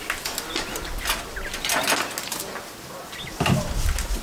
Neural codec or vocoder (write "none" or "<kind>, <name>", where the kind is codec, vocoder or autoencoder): none